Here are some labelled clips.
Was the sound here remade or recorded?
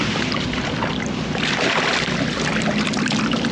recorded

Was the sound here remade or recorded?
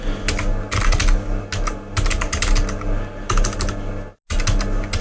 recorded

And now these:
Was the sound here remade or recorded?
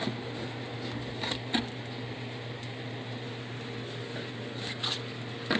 recorded